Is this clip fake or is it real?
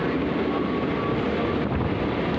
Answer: real